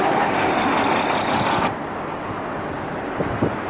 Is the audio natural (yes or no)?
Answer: yes